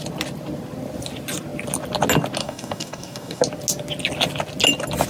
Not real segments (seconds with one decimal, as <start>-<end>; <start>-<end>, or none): 2.4-3.4